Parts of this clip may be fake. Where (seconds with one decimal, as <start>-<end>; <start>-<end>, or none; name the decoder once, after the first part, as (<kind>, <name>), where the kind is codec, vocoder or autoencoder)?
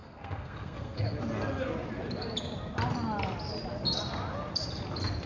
0.0-1.0 (codec, SNAC)